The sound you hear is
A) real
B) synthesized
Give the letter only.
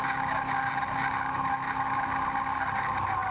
A